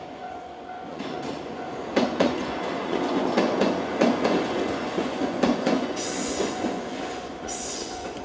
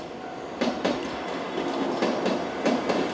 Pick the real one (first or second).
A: second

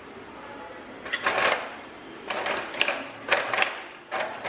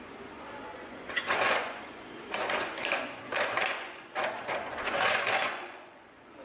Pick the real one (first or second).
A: first